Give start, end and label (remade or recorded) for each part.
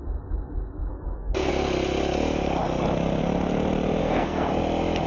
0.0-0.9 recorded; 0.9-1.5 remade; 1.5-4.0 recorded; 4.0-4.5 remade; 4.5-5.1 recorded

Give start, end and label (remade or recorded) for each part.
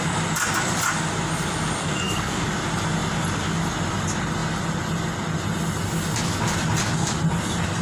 0.0-1.8 recorded; 1.8-2.4 remade; 2.4-7.8 recorded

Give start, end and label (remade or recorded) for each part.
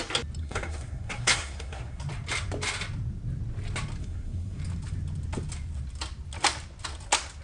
0.0-0.4 recorded; 0.4-2.0 remade; 2.0-4.0 recorded; 4.0-4.6 remade; 4.6-7.4 recorded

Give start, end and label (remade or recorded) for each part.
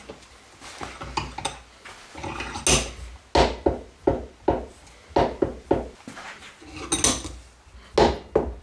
0.0-8.6 recorded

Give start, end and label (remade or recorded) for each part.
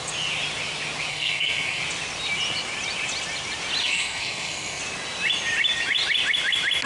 0.0-1.1 recorded; 1.1-1.8 remade; 1.8-3.8 recorded; 3.8-4.8 remade; 4.8-6.9 recorded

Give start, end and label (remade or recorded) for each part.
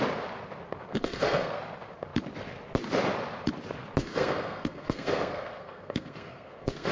0.0-0.9 recorded; 0.9-1.6 remade; 1.6-4.0 recorded; 4.0-6.9 remade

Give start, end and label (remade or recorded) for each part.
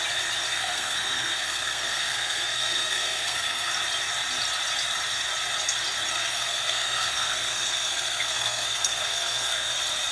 0.0-0.5 recorded; 0.5-3.7 remade; 3.7-6.1 recorded; 6.1-9.7 remade; 9.7-10.1 recorded